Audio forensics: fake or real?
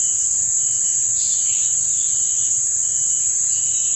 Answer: real